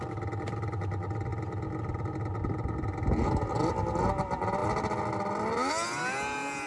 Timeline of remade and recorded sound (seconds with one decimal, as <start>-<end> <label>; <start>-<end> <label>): 0.0-6.7 recorded